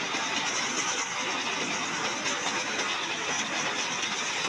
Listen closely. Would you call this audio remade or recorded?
recorded